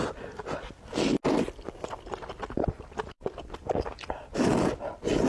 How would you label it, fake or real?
real